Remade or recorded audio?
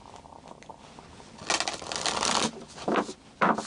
recorded